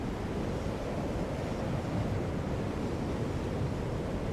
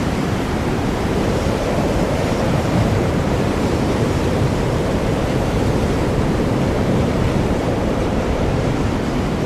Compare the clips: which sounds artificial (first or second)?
second